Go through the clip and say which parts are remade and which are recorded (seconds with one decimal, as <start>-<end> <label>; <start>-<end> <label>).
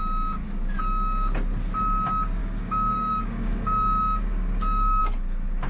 0.0-2.4 recorded; 2.4-5.0 remade; 5.0-5.7 recorded